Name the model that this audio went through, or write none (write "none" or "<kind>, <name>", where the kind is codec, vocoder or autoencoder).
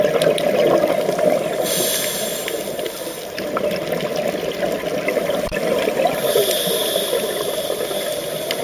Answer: none